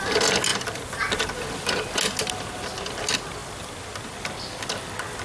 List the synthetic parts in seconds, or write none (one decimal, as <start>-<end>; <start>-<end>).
none